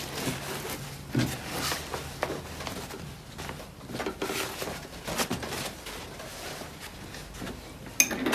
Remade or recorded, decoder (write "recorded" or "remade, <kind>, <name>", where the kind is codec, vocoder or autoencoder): recorded